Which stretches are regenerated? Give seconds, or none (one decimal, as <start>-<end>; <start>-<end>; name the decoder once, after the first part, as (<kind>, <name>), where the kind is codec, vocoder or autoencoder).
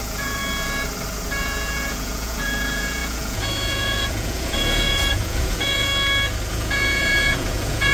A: 0.0-0.4 (vocoder, Vocos); 1.4-5.9; 6.5-7.9